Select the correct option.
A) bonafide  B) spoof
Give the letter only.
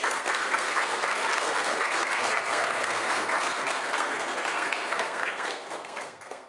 B